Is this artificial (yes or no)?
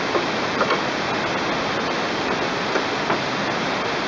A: no